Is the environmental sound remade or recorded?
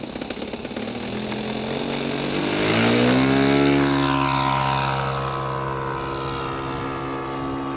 recorded